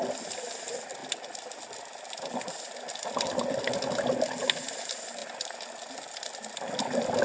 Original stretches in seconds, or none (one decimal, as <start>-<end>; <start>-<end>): 0.0-7.2

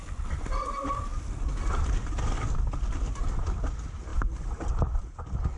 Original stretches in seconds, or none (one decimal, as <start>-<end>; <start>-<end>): 0.0-5.6